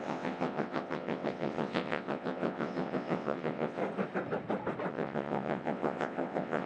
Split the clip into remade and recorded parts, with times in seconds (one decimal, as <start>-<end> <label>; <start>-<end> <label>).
0.0-3.8 remade; 3.8-4.9 recorded; 4.9-6.7 remade